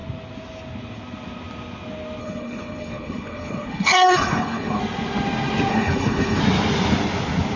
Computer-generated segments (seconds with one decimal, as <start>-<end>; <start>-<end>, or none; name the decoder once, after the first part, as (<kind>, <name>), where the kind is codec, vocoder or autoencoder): 2.2-4.8 (codec, HILCodec); 5.7-6.4